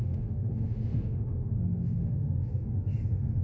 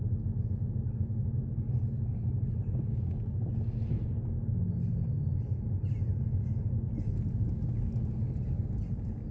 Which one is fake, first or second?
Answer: first